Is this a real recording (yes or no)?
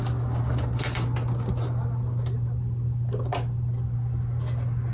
yes